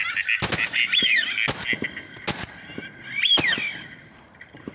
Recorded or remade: recorded